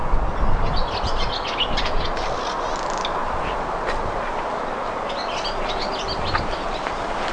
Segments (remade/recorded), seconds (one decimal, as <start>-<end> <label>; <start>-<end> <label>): 0.0-7.3 recorded